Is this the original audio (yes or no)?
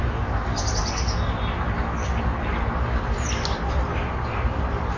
yes